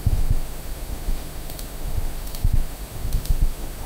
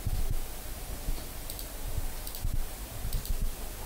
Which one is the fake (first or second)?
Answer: first